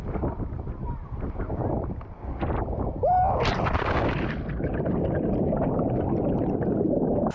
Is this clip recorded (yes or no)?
no